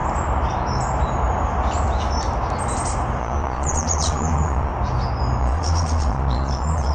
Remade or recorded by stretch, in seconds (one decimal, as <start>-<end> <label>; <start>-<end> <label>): 0.0-3.2 recorded; 3.2-4.7 remade; 4.7-5.4 recorded; 5.4-6.9 remade